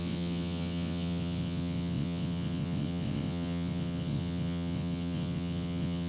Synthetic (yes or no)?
yes